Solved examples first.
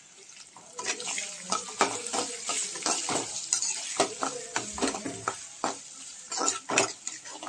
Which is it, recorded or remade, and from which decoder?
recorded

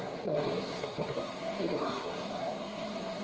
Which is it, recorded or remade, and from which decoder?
remade, codec, SNAC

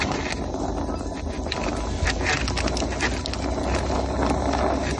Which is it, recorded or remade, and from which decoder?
recorded